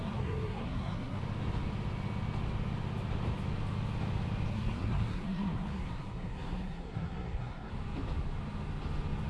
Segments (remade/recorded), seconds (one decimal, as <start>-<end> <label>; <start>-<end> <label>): 0.0-1.2 remade; 1.2-4.5 recorded; 4.5-7.7 remade; 7.7-9.3 recorded